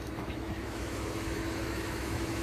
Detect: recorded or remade remade